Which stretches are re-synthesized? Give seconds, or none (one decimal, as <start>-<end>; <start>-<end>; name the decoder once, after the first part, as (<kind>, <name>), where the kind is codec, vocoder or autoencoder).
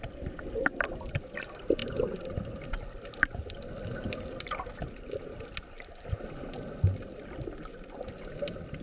none